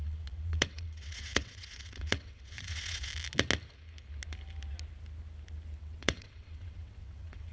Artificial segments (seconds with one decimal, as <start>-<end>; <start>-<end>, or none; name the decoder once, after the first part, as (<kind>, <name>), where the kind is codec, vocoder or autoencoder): 0.0-3.1 (vocoder, WaveNeXt); 5.8-7.5